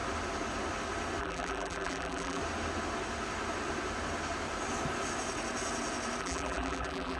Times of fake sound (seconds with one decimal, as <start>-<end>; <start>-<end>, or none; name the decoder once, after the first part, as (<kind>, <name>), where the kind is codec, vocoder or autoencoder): 1.2-2.4 (vocoder, BigVGAN v2); 6.2-7.2